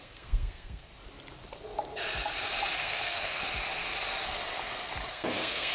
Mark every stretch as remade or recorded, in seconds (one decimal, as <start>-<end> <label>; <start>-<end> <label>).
0.0-0.9 remade; 0.9-2.8 recorded; 2.8-3.4 remade; 3.4-5.1 recorded; 5.1-5.7 remade